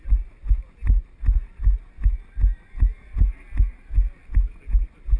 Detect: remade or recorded recorded